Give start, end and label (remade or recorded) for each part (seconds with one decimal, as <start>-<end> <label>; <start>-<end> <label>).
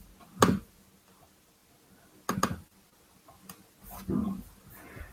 0.0-5.1 recorded